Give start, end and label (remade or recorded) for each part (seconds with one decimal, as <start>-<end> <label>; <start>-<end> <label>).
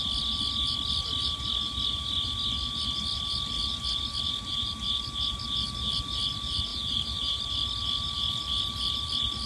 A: 0.0-6.7 recorded; 6.7-7.4 remade; 7.4-9.5 recorded